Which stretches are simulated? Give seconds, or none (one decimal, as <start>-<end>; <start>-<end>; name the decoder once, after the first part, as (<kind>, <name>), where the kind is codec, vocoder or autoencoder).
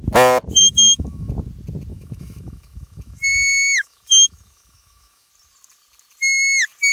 0.6-1.3 (autoencoder, DAC-VAE); 1.9-5.3